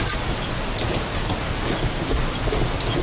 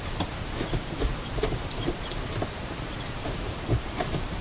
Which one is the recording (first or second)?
first